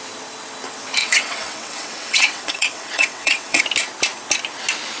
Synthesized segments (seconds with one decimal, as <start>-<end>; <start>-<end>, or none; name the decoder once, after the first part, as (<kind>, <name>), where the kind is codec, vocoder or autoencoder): 1.0-3.6 (vocoder, WaveNeXt)